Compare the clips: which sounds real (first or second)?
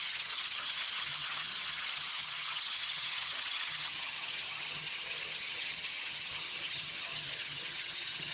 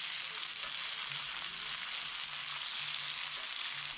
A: second